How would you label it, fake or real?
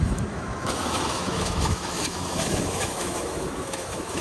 fake